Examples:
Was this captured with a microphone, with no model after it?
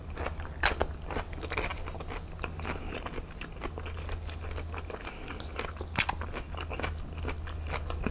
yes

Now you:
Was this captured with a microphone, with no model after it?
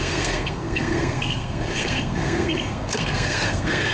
no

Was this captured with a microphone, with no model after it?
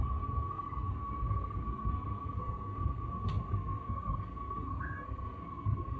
no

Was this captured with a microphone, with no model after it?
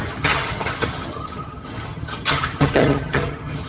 no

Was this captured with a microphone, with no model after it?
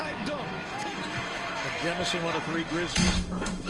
no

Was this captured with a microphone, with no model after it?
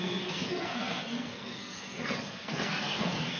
no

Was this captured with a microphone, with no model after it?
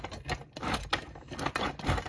yes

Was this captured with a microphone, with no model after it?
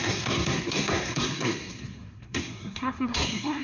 no